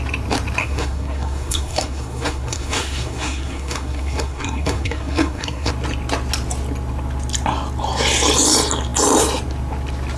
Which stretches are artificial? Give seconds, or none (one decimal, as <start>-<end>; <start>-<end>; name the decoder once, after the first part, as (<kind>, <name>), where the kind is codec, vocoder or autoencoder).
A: 0.6-5.7 (codec, SNAC)